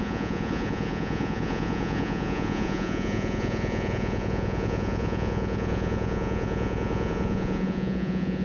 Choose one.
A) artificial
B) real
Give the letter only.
A